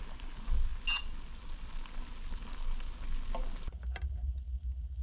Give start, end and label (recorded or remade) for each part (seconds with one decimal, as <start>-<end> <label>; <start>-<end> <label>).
0.0-5.0 recorded